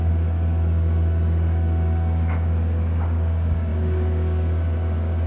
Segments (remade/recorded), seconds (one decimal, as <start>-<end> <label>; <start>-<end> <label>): 0.0-5.3 remade